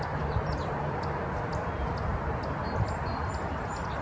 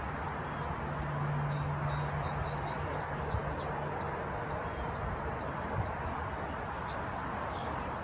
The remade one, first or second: first